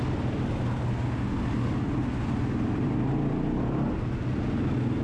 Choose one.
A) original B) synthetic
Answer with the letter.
A